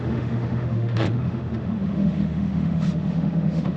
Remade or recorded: remade